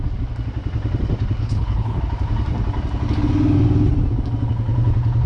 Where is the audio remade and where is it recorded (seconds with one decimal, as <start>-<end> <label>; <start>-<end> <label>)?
0.0-1.4 recorded; 1.4-2.0 remade; 2.0-5.3 recorded